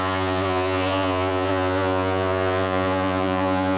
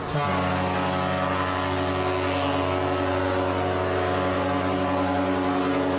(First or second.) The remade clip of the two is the first